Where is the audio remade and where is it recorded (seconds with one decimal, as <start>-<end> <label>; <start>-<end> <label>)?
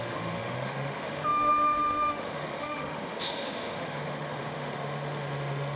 0.0-5.8 remade